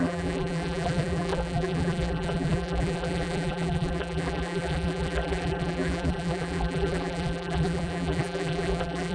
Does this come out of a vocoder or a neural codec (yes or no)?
yes